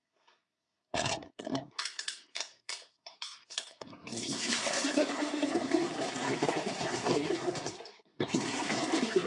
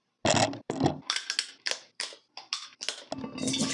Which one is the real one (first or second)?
second